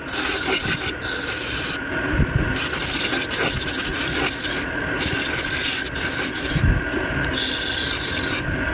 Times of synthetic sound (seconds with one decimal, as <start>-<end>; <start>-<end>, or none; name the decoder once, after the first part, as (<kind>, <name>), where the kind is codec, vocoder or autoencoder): none